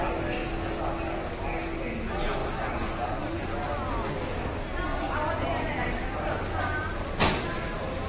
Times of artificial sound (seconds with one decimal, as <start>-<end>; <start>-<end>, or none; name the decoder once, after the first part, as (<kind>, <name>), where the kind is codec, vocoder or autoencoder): 4.9-6.5 (vocoder, BigVGAN v2)